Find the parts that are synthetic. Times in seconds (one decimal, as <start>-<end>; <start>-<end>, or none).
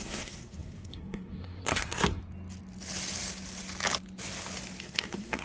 0.0-2.2; 4.8-5.4